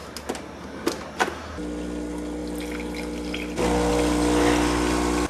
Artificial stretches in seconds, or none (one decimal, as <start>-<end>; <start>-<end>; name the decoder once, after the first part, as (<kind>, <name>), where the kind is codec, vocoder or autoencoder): none